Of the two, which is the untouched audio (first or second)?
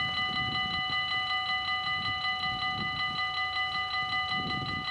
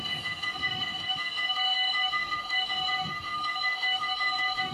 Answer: first